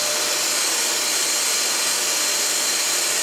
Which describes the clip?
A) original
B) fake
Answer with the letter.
A